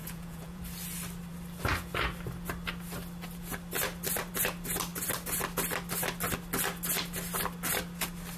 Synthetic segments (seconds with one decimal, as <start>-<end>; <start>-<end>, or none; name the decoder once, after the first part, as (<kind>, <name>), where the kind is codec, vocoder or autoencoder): 0.0-0.6 (vocoder, Vocos)